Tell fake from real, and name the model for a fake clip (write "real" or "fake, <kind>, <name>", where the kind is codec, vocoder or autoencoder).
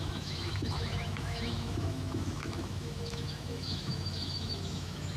fake, autoencoder, DAC-VAE